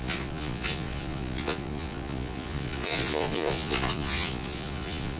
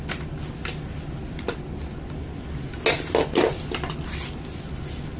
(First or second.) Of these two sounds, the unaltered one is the second